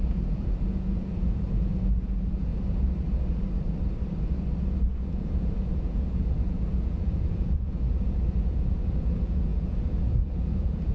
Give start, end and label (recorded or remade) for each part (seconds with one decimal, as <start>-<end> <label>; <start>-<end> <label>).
0.0-2.5 remade; 2.5-5.0 recorded; 5.0-10.9 remade